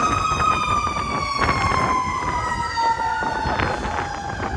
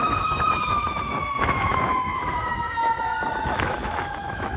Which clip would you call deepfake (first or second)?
second